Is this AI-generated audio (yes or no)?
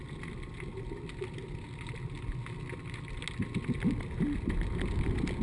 no